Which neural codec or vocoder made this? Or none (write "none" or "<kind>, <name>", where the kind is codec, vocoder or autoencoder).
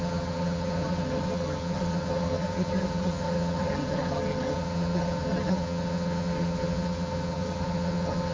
vocoder, HiFi-GAN